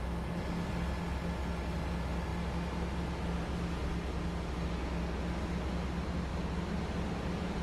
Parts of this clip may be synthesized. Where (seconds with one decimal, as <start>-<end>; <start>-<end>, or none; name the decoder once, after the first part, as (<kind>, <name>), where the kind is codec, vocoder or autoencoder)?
none

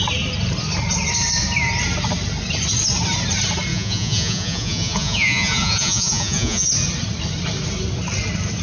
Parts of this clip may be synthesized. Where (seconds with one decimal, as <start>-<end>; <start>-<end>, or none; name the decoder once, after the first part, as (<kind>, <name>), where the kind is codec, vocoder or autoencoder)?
3.7-6.7 (vocoder, Vocos)

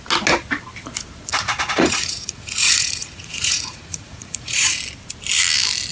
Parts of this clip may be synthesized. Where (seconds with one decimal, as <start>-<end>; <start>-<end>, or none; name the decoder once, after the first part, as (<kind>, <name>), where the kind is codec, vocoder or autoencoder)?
1.3-4.8 (vocoder, Vocos)